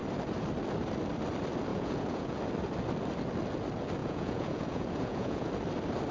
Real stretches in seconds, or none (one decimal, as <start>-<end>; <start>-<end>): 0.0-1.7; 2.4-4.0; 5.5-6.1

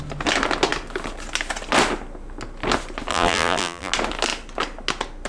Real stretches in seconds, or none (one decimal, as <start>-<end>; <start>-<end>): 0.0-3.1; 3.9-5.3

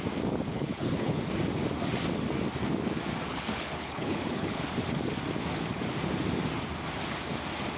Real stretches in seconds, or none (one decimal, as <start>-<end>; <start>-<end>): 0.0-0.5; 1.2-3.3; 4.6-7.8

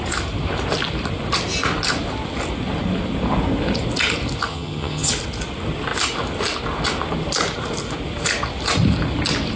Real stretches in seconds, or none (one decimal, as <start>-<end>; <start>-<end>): 0.0-4.5; 5.1-9.6